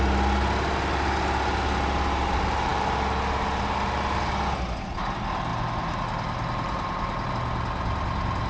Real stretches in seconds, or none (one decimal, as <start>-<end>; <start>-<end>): 0.0-8.5